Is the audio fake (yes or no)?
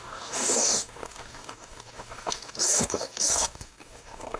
yes